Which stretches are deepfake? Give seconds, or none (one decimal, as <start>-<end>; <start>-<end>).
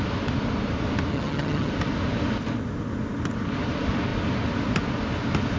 1.1-1.7